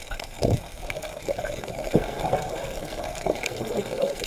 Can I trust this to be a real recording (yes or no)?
no